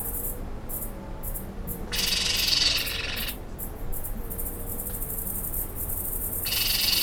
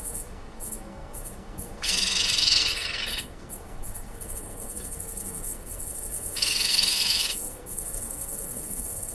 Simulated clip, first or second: second